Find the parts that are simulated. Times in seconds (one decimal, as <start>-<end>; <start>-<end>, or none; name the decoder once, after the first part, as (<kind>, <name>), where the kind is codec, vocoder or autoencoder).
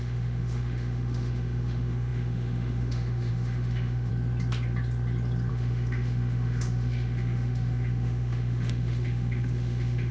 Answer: 0.0-4.1 (autoencoder, DAC-VAE); 5.5-10.1